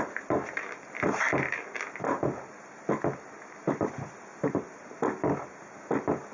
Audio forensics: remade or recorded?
remade